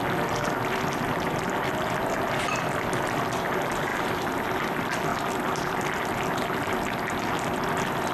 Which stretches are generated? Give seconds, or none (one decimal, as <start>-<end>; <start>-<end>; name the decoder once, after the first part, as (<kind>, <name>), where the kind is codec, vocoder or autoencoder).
none